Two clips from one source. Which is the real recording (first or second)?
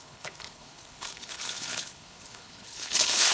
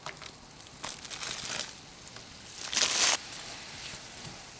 second